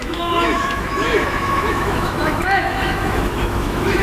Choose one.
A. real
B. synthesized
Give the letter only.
B